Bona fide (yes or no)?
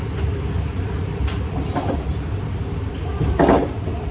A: yes